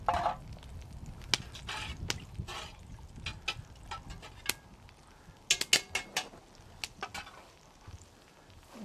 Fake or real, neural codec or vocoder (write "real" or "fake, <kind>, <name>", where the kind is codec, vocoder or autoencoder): real